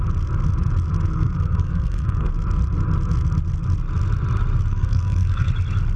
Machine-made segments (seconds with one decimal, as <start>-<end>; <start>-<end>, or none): 1.1-2.3; 4.7-5.5